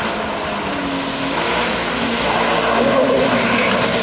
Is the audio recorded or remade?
recorded